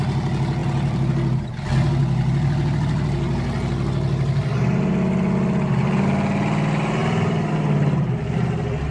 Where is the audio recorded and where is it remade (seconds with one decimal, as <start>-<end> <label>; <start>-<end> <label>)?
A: 0.0-0.6 recorded; 0.6-1.1 remade; 1.1-7.0 recorded; 7.0-7.5 remade; 7.5-8.9 recorded